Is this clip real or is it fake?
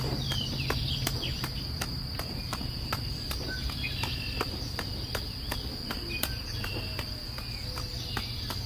real